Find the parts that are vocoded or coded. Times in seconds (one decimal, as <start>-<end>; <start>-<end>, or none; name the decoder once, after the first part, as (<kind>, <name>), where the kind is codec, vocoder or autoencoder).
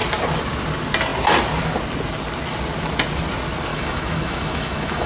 3.7-5.1 (autoencoder, DAC-VAE)